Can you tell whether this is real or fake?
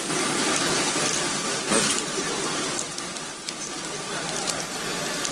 real